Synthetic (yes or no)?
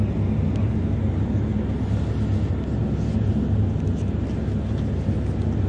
no